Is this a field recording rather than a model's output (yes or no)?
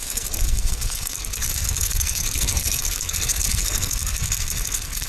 no